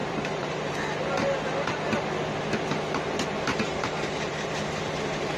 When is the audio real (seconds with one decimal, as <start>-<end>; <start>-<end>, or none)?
0.7-3.5; 4.5-5.4